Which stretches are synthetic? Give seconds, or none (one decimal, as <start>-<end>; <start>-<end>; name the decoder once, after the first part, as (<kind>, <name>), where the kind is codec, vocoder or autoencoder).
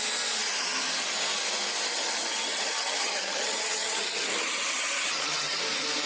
1.9-5.6 (vocoder, HiFi-GAN)